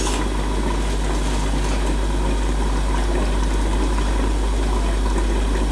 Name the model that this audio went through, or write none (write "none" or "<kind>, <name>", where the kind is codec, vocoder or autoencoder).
none